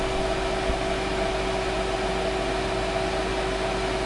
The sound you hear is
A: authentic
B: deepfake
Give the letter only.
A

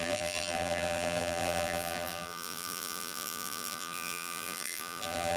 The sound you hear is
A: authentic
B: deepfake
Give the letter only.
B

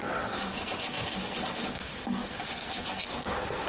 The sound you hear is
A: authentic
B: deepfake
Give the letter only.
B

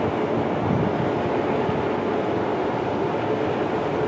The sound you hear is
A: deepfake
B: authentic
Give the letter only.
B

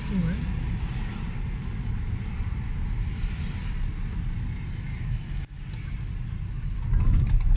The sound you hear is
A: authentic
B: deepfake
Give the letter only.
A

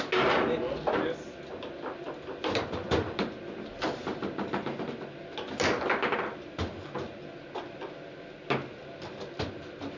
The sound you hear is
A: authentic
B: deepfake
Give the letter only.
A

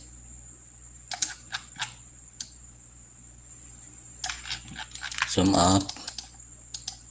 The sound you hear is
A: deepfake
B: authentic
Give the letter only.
B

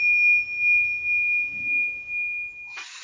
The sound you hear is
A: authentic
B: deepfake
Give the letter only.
A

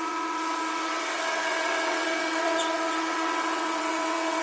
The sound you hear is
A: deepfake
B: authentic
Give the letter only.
A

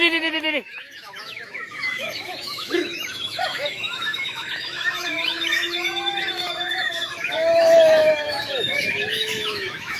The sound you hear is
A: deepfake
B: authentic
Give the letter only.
A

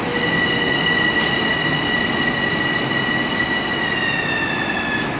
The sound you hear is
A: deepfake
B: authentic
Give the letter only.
B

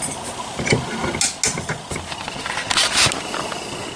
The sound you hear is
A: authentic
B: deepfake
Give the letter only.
A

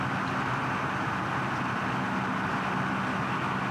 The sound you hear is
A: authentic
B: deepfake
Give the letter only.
A